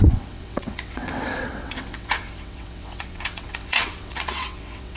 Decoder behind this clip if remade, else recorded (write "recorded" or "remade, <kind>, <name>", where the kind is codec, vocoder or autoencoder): remade, vocoder, WaveNeXt